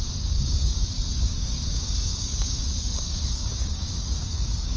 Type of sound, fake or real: fake